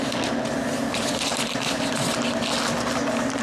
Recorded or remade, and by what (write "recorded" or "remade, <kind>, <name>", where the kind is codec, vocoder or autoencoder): recorded